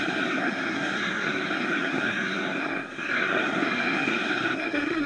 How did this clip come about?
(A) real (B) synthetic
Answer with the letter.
B